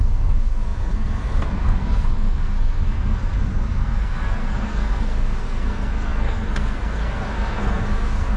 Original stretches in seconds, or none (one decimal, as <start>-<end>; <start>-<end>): none